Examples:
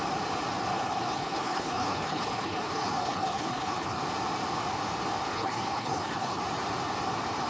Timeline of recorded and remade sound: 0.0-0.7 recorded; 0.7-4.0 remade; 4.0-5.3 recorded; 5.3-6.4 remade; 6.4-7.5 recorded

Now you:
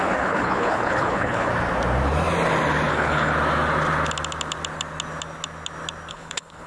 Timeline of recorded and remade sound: 0.0-1.5 remade; 1.5-2.9 recorded; 2.9-3.3 remade; 3.3-6.1 recorded; 6.1-6.7 remade

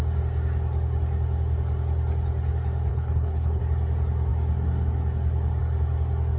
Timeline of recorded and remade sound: 0.0-2.9 recorded; 2.9-3.6 remade; 3.6-6.4 recorded

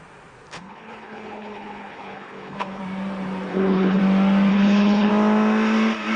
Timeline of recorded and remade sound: 0.0-0.5 recorded; 0.5-2.8 remade; 2.8-3.5 recorded; 3.5-4.0 remade; 4.0-4.5 recorded; 4.5-5.1 remade; 5.1-6.2 recorded

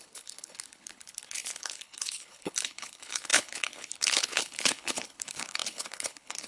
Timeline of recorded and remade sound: 0.0-6.5 remade

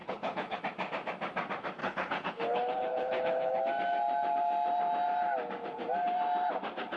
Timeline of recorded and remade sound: 0.0-0.6 remade; 0.6-1.8 recorded; 1.8-3.6 remade; 3.6-7.0 recorded

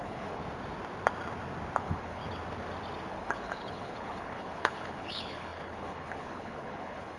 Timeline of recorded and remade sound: 0.0-0.4 remade; 0.4-1.8 recorded; 1.8-2.2 remade; 2.2-3.1 recorded; 3.1-7.2 remade